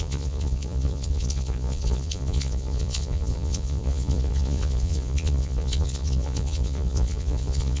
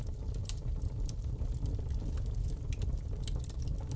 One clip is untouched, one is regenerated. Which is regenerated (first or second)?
first